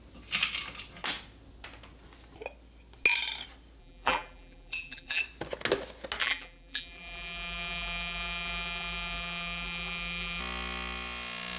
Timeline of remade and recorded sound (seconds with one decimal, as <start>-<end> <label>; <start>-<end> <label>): 0.0-3.8 recorded; 3.8-5.2 remade; 5.2-6.2 recorded; 6.2-10.4 remade; 10.4-11.6 recorded